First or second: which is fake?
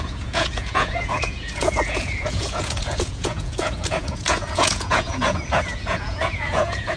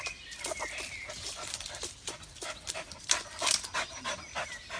first